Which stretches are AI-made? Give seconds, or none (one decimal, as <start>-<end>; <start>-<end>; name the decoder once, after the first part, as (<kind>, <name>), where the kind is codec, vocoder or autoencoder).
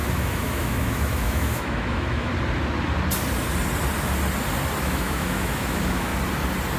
0.0-2.3 (autoencoder, DAC-VAE); 4.8-6.1